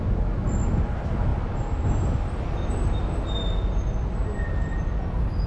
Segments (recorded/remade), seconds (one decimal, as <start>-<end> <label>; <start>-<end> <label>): 0.0-5.5 recorded